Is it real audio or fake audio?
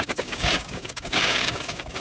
fake